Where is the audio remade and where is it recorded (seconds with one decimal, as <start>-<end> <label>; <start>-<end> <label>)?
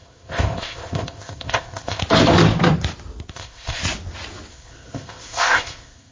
0.0-2.0 remade; 2.0-3.3 recorded; 3.3-3.8 remade; 3.8-4.5 recorded; 4.5-6.1 remade